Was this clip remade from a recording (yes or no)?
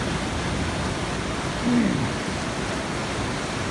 no